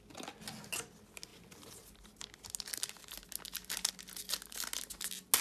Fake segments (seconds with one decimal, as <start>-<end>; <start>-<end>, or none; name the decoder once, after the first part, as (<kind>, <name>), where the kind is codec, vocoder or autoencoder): none